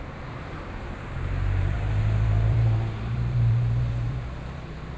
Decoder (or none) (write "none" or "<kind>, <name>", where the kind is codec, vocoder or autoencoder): vocoder, BigVGAN v2